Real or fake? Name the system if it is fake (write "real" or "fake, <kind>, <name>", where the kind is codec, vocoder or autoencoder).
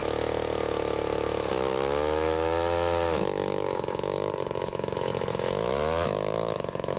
fake, autoencoder, DAC-VAE